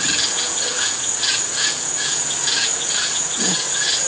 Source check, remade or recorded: remade